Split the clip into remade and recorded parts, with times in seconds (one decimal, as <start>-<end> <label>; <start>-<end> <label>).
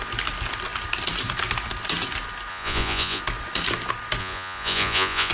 0.0-2.5 recorded; 2.5-3.2 remade; 3.2-4.2 recorded; 4.2-5.3 remade